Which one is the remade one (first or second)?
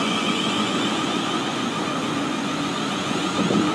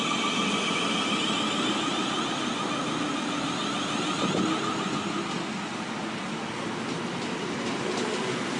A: first